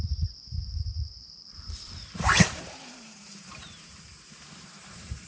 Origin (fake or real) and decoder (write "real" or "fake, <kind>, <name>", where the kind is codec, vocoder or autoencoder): fake, vocoder, BigVGAN v2